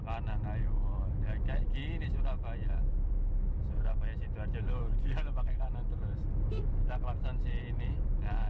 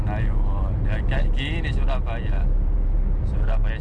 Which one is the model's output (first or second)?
first